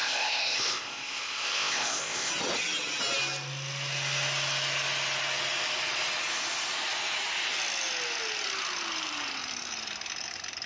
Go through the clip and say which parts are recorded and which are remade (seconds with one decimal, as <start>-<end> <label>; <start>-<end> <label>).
0.0-2.3 remade; 2.3-10.7 recorded